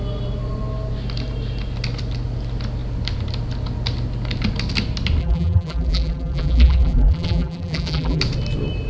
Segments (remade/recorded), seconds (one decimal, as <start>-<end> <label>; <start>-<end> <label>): 0.0-5.2 recorded; 5.2-8.2 remade; 8.2-8.9 recorded